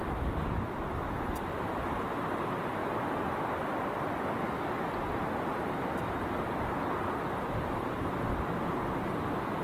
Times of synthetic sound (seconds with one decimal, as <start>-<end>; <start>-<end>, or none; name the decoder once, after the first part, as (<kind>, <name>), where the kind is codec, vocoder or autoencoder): 0.0-2.8 (vocoder, BigVGAN v2); 3.5-9.6